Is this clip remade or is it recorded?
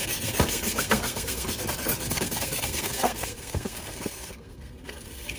remade